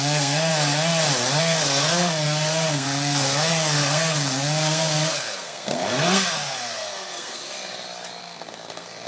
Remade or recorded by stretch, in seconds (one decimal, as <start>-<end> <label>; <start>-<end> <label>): 0.0-0.5 remade; 0.5-1.4 recorded; 1.4-7.4 remade; 7.4-8.2 recorded; 8.2-9.1 remade

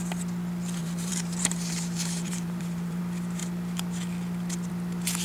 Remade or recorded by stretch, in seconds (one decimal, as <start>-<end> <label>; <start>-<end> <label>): 0.0-0.8 recorded; 0.8-3.0 remade; 3.0-5.2 recorded

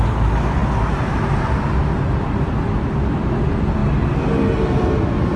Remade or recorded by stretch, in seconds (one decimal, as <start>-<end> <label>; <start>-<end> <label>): 0.0-5.4 recorded

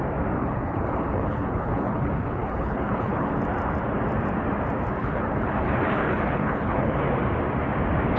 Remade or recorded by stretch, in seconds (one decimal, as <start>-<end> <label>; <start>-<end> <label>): 0.0-0.4 recorded; 0.4-3.3 remade; 3.3-5.0 recorded; 5.0-7.0 remade; 7.0-8.2 recorded

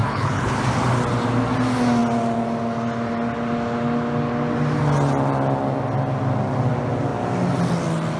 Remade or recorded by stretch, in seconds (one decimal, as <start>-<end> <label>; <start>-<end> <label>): 0.0-0.6 remade; 0.6-8.2 recorded

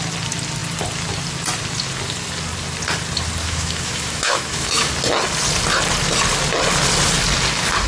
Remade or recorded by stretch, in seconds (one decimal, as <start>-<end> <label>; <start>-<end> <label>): 0.0-3.4 recorded; 3.4-4.9 remade; 4.9-7.9 recorded

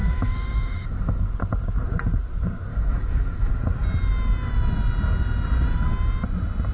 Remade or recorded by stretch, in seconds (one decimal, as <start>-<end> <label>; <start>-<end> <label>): 0.0-1.2 remade; 1.2-2.7 recorded; 2.7-3.5 remade; 3.5-6.7 recorded